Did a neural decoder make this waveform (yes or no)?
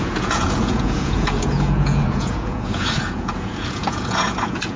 yes